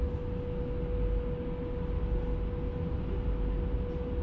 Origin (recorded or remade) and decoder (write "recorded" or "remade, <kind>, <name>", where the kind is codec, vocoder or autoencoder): recorded